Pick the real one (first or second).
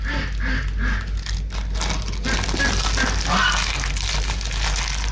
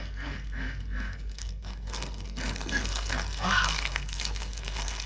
first